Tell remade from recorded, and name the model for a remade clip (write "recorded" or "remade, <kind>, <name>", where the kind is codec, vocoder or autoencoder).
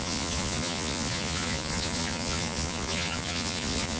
remade, vocoder, Vocos